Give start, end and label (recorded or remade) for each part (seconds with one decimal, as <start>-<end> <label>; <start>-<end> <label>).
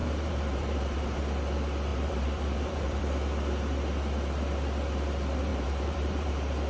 0.0-1.2 remade; 1.2-1.9 recorded; 1.9-3.0 remade; 3.0-5.5 recorded; 5.5-6.3 remade; 6.3-6.7 recorded